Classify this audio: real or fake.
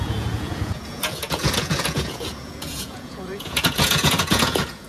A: fake